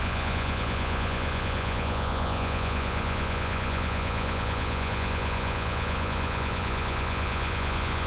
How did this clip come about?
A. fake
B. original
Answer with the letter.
A